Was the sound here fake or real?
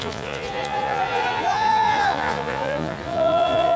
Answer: fake